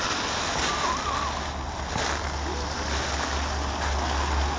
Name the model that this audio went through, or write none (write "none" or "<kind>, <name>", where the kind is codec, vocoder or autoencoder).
none